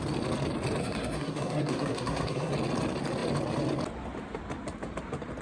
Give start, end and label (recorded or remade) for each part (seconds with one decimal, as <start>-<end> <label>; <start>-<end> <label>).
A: 0.0-0.8 recorded; 0.8-2.5 remade; 2.5-5.4 recorded